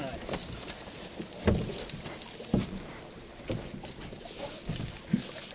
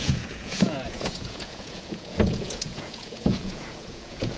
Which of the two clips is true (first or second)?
first